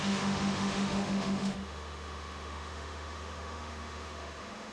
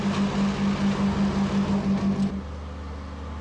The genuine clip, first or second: second